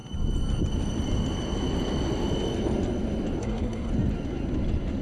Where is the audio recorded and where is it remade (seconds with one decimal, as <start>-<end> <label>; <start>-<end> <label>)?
0.0-3.4 recorded; 3.4-3.9 remade; 3.9-5.0 recorded